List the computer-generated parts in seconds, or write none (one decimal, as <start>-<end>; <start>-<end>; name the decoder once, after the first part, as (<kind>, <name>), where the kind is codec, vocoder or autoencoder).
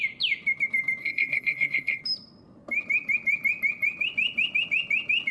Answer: 1.0-2.0 (codec, SNAC)